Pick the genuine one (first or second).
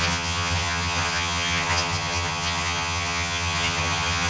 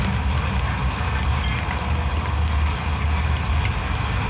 second